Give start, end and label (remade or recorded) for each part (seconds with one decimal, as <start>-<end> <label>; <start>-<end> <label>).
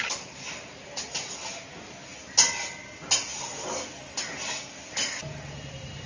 0.0-6.1 recorded